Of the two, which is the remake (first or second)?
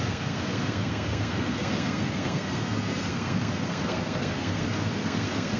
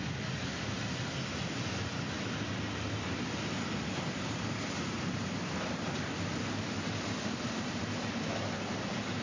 first